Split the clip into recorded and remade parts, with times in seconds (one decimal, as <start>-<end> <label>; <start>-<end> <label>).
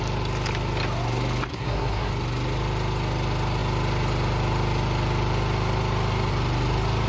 0.0-1.5 recorded; 1.5-2.1 remade; 2.1-7.1 recorded